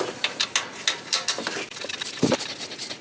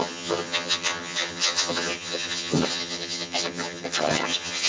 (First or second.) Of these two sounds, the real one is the first